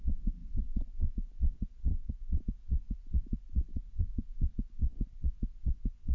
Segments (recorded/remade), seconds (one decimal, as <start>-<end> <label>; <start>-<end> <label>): 0.0-0.4 recorded; 0.4-1.1 remade; 1.1-1.9 recorded; 1.9-2.4 remade; 2.4-3.7 recorded; 3.7-4.5 remade; 4.5-6.1 recorded